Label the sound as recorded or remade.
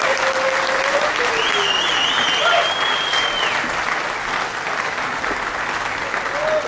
recorded